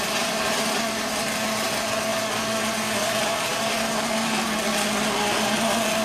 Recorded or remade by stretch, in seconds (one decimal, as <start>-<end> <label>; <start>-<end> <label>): 0.0-6.0 recorded